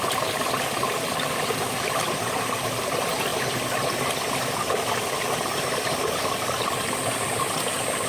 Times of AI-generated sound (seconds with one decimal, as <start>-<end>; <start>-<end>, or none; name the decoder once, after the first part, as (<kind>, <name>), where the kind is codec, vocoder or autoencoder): none